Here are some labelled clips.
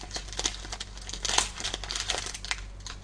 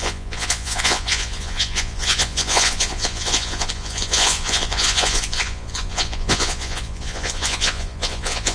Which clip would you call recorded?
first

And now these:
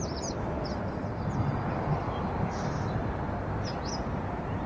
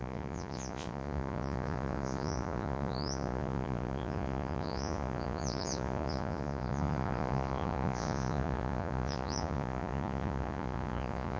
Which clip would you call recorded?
first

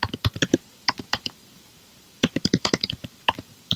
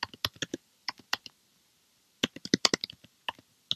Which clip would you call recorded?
second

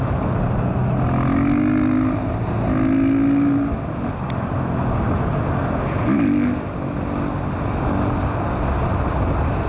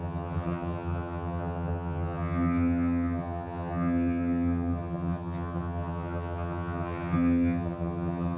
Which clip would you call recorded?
first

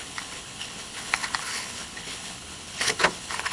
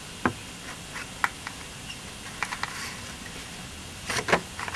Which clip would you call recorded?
second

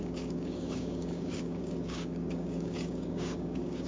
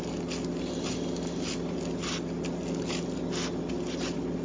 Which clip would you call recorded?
second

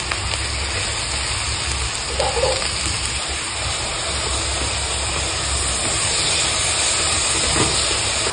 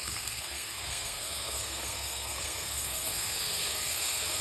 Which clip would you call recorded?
first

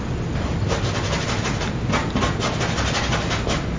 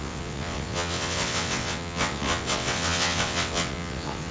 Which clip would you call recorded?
first